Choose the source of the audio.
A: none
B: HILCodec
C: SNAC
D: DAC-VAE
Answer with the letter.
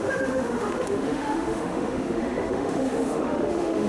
D